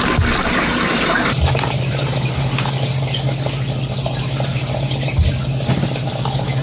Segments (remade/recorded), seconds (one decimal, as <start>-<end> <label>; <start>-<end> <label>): 0.0-0.9 recorded; 0.9-2.3 remade; 2.3-6.6 recorded